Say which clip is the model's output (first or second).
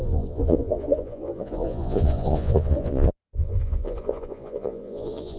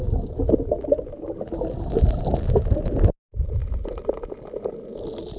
first